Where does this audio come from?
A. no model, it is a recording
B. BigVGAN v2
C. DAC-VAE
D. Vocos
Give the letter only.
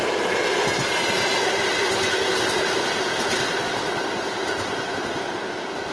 A